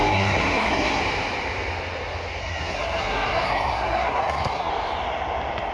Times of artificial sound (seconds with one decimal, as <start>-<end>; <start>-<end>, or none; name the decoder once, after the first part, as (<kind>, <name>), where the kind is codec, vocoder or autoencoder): 0.0-1.0 (codec, SNAC); 2.4-4.7